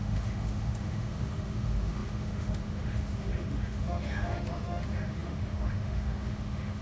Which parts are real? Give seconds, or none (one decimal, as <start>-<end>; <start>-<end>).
none